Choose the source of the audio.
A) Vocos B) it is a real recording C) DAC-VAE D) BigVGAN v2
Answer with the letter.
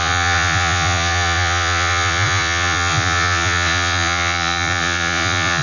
A